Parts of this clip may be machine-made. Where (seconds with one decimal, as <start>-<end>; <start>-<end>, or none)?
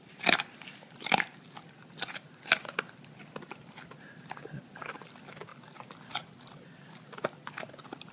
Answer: none